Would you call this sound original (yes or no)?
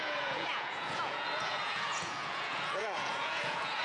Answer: no